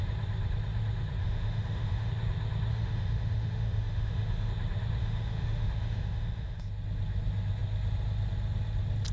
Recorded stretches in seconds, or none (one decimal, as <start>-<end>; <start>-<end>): 0.0-1.2; 2.1-2.7; 4.5-5.0; 6.6-9.1